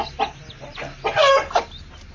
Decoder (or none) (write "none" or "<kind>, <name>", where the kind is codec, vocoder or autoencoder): none